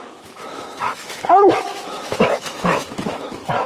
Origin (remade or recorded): remade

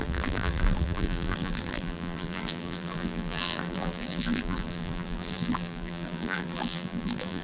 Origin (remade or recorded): remade